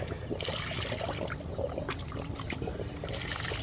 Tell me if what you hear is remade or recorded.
recorded